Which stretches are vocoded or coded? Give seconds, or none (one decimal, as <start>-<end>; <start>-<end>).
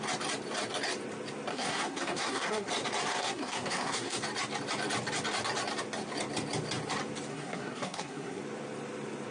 1.5-2.7; 3.1-4.2; 7.3-8.4